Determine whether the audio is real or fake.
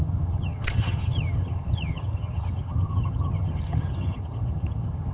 fake